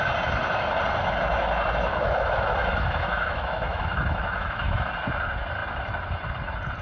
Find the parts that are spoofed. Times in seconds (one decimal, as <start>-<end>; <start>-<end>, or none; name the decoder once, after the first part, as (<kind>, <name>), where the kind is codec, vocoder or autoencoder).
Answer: 1.9-4.9 (autoencoder, DAC-VAE)